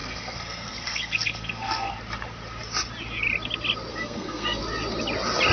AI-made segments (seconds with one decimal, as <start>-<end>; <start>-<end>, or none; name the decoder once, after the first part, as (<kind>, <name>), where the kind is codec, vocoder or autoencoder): 0.0-1.9 (codec, SNAC); 3.9-4.6